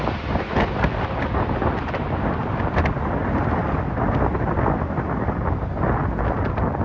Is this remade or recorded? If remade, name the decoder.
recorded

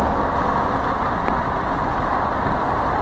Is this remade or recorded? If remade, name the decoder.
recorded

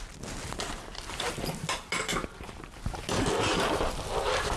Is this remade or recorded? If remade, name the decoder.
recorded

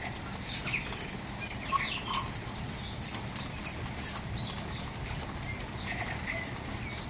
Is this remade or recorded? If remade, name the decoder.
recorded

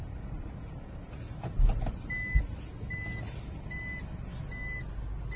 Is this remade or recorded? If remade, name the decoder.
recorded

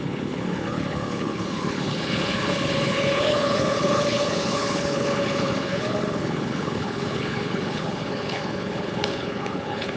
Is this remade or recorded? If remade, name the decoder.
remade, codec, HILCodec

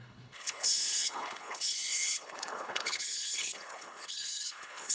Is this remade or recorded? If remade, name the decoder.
remade, codec, HILCodec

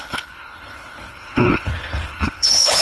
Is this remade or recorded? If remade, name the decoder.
remade, codec, HILCodec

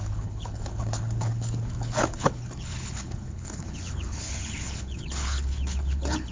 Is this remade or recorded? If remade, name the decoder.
remade, codec, HILCodec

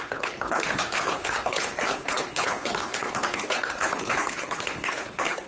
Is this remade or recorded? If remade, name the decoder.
remade, codec, HILCodec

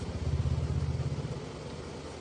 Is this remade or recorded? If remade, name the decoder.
recorded